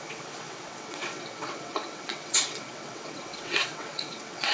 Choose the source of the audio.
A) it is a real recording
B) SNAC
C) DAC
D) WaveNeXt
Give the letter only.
D